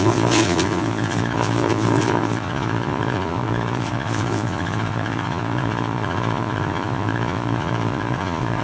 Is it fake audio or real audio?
fake